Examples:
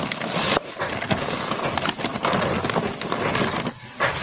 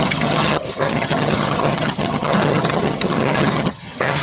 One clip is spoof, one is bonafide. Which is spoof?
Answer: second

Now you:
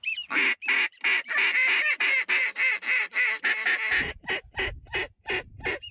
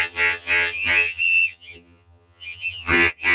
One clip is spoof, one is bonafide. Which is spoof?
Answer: second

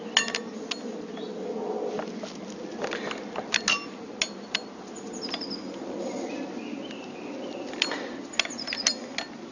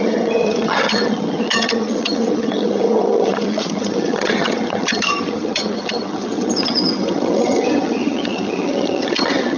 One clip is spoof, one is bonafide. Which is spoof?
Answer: second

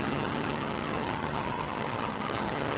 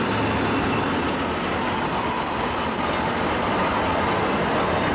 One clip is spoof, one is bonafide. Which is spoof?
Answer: first